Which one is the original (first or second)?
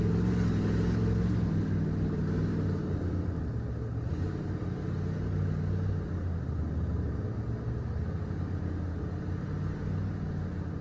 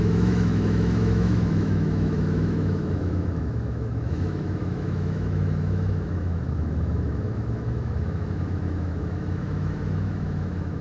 first